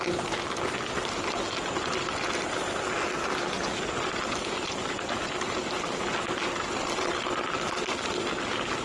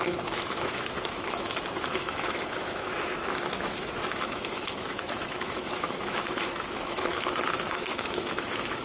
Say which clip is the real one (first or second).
first